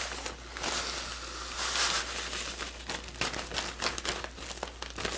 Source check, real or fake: real